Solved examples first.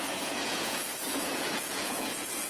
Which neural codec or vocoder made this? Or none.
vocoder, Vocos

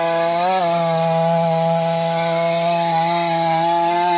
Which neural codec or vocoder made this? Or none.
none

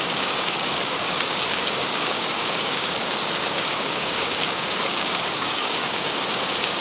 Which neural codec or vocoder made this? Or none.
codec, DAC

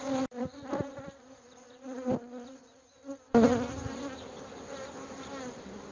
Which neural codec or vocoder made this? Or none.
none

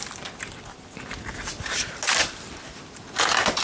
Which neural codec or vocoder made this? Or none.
none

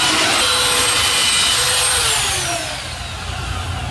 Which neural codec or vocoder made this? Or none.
none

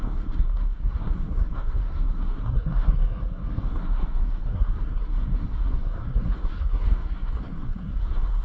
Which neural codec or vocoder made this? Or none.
codec, SNAC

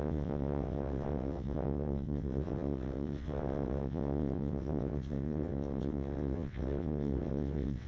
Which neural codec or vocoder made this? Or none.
vocoder, WaveNeXt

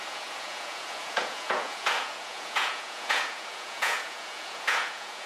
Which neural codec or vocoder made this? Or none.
vocoder, Vocos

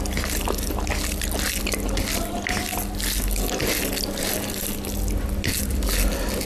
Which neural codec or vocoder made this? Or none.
none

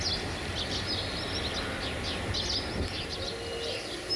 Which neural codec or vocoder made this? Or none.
none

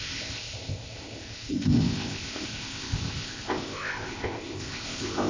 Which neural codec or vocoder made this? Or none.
codec, ZipCodec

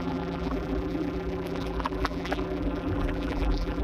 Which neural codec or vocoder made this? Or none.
vocoder, BigVGAN v2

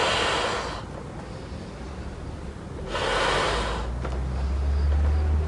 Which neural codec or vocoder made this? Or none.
none